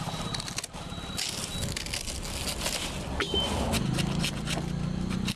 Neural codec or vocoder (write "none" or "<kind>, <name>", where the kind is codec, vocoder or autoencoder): none